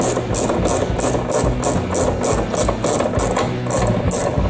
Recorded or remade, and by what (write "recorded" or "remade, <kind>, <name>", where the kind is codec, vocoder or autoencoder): recorded